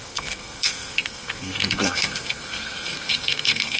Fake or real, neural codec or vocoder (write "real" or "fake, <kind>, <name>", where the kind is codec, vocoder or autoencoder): fake, codec, SNAC